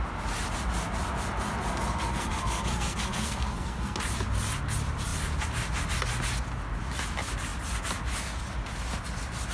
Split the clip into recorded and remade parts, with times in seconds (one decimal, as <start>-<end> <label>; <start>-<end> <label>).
0.0-1.7 recorded; 1.7-4.0 remade; 4.0-9.5 recorded